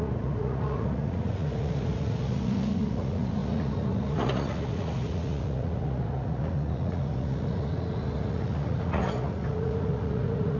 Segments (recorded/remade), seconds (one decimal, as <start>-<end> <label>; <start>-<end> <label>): 0.0-10.6 remade